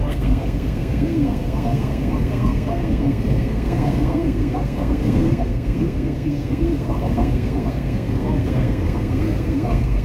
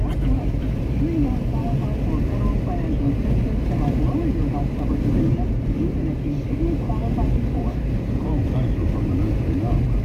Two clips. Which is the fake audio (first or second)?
first